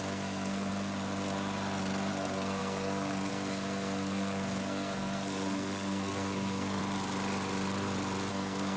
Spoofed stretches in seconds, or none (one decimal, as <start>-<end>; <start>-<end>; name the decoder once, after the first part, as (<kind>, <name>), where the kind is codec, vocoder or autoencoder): 0.0-0.7 (codec, SNAC); 2.1-6.8; 8.3-8.8